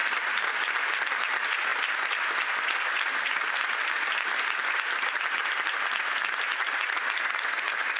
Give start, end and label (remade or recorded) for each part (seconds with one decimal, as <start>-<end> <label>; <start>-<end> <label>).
0.0-0.6 remade; 0.6-1.7 recorded; 1.7-6.4 remade; 6.4-8.0 recorded